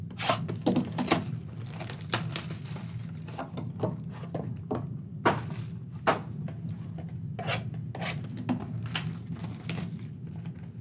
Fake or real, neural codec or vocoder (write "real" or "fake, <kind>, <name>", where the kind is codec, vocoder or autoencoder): real